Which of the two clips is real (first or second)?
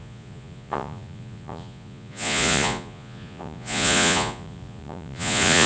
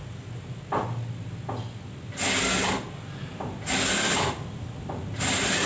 second